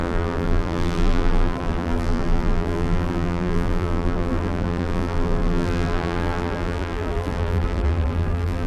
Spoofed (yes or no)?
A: yes